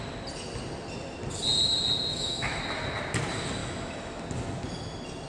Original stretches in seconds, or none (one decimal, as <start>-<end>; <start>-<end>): 0.0-2.1; 2.6-3.6; 4.2-5.3